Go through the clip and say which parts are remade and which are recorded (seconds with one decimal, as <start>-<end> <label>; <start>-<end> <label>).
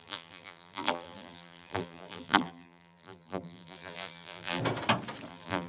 0.0-4.6 remade; 4.6-5.3 recorded; 5.3-5.7 remade